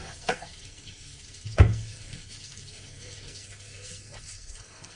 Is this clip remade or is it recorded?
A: remade